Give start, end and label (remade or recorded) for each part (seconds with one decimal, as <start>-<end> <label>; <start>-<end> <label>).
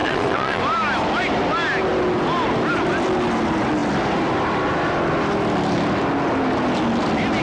0.0-0.6 remade; 0.6-7.4 recorded